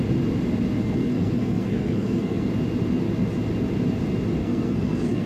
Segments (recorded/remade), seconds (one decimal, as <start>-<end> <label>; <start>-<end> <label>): 0.0-0.8 recorded; 0.8-2.5 remade; 2.5-4.4 recorded; 4.4-5.3 remade